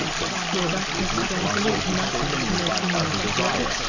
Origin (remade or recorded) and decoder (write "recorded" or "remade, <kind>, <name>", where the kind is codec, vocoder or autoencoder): recorded